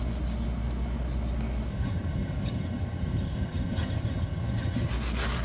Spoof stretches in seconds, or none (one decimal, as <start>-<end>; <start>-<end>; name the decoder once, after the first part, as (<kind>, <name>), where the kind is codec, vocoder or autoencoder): 1.7-4.9 (vocoder, HiFi-GAN)